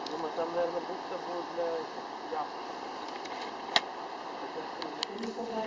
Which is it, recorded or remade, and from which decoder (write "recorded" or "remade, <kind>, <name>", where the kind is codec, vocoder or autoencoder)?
recorded